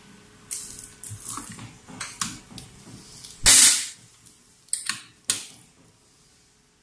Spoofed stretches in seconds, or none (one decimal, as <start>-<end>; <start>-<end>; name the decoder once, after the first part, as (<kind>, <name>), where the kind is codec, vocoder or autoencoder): none